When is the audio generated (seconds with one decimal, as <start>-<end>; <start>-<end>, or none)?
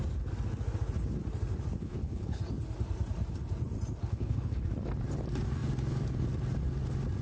1.8-2.4; 4.1-4.6